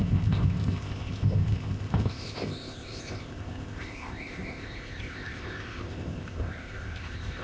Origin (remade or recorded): remade